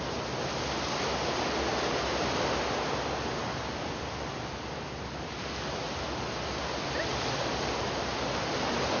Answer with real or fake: real